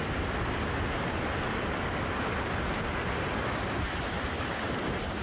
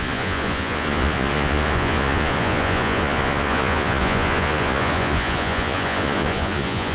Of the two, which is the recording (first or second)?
first